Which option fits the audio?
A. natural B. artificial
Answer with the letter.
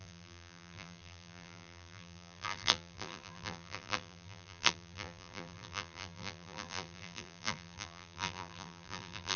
B